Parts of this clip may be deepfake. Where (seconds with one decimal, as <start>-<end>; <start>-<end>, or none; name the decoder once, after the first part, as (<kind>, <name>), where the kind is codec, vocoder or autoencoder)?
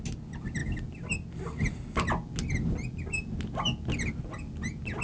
none